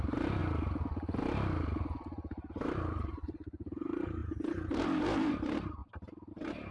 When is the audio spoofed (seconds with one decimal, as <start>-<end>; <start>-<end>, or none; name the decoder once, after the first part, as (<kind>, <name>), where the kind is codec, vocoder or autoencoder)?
0.0-0.4 (vocoder, BigVGAN v2); 2.5-5.8; 6.3-6.7